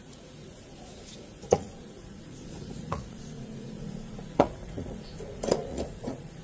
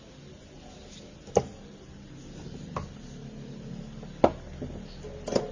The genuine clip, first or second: second